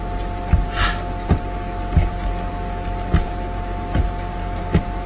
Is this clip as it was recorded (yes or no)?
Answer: yes